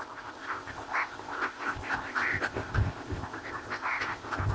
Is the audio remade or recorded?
remade